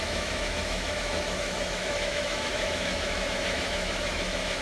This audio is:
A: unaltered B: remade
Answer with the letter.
B